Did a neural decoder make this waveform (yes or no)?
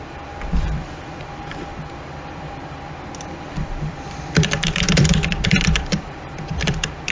yes